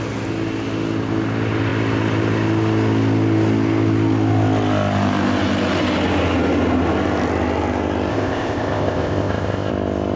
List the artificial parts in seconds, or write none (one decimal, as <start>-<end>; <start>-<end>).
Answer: 8.1-9.7